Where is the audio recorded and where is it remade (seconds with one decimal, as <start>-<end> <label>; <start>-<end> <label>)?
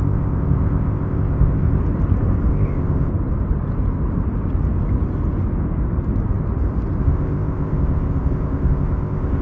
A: 0.0-1.8 remade; 1.8-2.5 recorded; 2.5-3.1 remade; 3.1-7.0 recorded; 7.0-9.4 remade